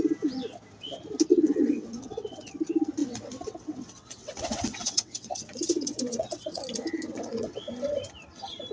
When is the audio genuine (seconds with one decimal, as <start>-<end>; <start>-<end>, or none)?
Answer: 0.0-1.3; 2.5-3.0; 6.6-7.1; 7.7-8.7